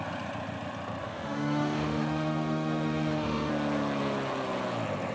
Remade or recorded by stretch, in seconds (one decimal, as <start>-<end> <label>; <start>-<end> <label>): 0.0-1.0 recorded; 1.0-3.5 remade; 3.5-5.1 recorded